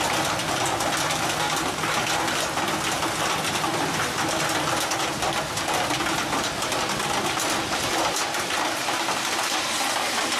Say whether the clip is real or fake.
real